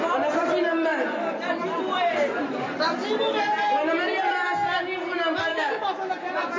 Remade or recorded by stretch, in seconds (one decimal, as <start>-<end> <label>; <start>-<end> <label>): 0.0-5.5 recorded; 5.5-6.1 remade; 6.1-6.6 recorded